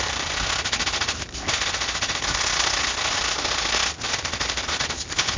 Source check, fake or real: real